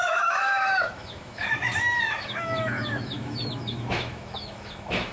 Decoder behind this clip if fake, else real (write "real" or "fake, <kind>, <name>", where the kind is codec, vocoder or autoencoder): fake, autoencoder, DAC-VAE